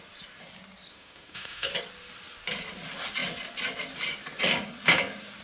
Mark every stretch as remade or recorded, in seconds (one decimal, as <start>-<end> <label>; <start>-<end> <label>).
0.0-0.9 recorded; 0.9-1.7 remade; 1.7-5.4 recorded